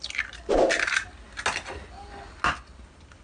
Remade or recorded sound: recorded